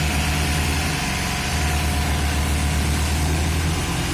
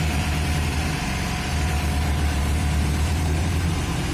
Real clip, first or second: first